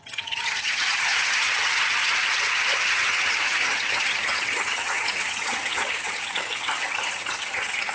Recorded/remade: remade